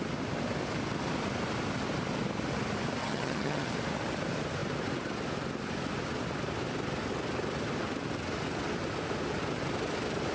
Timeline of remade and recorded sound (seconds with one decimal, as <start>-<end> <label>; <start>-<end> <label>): 0.0-3.0 recorded; 3.0-3.7 remade; 3.7-10.3 recorded